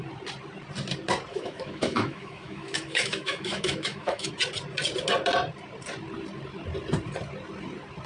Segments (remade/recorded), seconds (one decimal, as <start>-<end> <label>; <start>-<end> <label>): 0.0-1.3 recorded; 1.3-4.3 remade; 4.3-8.1 recorded